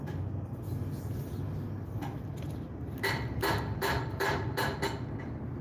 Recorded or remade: recorded